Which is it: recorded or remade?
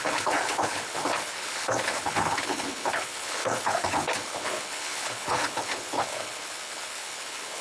remade